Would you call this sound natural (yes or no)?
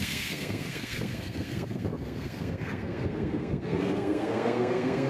no